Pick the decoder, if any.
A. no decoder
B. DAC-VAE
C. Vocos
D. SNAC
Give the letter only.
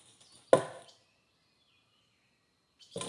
A